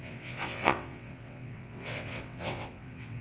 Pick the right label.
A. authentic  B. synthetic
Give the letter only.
B